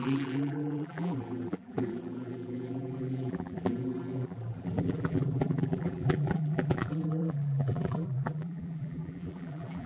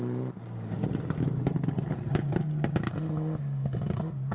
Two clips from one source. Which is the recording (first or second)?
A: second